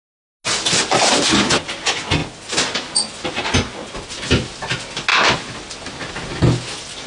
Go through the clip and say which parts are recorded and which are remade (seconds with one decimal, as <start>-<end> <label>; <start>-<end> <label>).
0.0-7.1 recorded

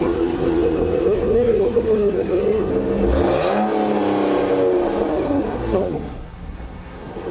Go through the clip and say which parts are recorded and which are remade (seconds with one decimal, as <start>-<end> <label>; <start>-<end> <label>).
0.0-2.7 remade; 2.7-5.1 recorded; 5.1-7.3 remade

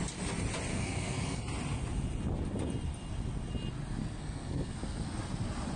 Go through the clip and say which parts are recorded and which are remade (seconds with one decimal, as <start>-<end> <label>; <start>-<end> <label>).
0.0-0.7 recorded; 0.7-1.4 remade; 1.4-4.0 recorded; 4.0-5.2 remade; 5.2-5.8 recorded